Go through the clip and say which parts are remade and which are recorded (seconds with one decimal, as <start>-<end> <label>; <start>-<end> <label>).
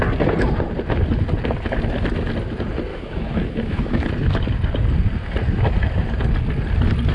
0.0-2.9 recorded; 2.9-4.1 remade; 4.1-7.1 recorded